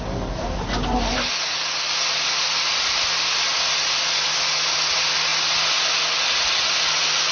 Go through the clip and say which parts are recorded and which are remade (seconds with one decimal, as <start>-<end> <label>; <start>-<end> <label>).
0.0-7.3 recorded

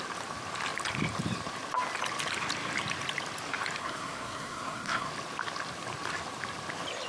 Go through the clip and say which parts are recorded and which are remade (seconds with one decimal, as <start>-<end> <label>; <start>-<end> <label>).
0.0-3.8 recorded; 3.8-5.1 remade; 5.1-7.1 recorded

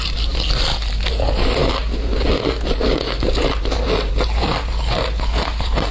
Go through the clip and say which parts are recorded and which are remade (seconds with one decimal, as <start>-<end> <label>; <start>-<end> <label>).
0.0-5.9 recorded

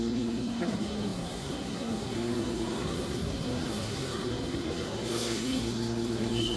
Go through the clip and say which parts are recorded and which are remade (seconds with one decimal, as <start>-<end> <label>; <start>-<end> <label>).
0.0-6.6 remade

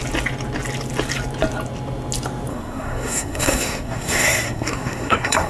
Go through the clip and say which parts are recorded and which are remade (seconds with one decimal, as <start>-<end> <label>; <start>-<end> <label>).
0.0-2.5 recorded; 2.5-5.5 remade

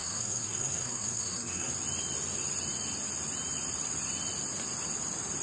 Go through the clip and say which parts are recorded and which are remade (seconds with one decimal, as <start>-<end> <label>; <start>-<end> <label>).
0.0-1.7 remade; 1.7-5.4 recorded